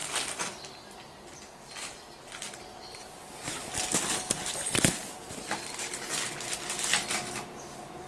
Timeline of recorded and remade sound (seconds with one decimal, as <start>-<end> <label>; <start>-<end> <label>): 0.0-8.1 recorded